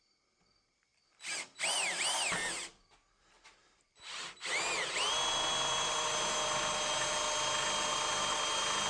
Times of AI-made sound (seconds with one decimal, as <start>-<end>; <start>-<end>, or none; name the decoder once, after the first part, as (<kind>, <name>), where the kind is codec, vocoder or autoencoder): none